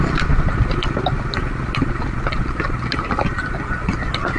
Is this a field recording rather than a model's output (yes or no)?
no